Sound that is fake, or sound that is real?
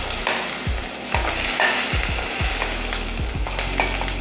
real